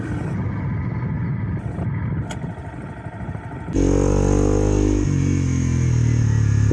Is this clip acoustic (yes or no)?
yes